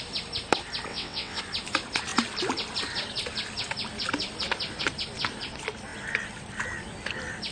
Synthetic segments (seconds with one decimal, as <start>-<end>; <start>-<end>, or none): 0.9-1.4